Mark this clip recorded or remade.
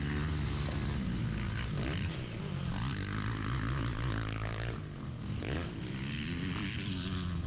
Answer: recorded